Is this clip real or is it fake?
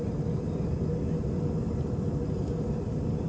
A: real